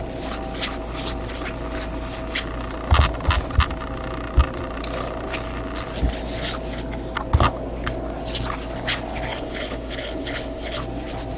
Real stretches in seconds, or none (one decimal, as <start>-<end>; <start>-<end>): 0.0-9.3; 10.8-11.4